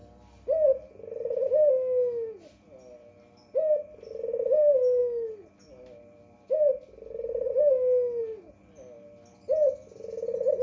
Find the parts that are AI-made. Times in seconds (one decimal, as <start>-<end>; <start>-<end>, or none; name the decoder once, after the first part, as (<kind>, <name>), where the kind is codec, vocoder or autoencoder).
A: none